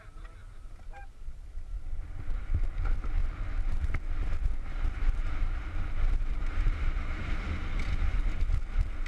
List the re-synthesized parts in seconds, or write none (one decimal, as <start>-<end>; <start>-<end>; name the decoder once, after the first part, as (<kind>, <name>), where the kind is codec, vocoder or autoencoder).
3.2-7.3 (vocoder, BigVGAN v2)